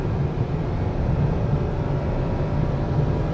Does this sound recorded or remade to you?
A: recorded